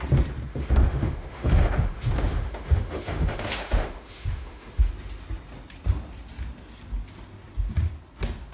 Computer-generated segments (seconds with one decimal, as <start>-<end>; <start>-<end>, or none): 0.5-4.9